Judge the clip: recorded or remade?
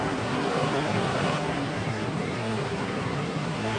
remade